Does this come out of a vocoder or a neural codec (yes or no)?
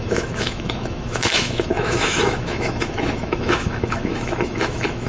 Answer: yes